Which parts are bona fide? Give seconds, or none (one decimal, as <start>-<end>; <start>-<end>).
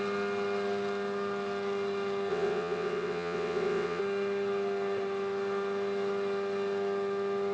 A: 0.0-2.3; 4.0-7.5